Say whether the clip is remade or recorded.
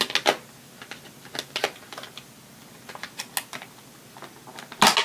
recorded